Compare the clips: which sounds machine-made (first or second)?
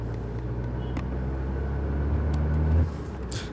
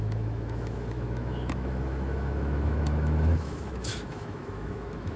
second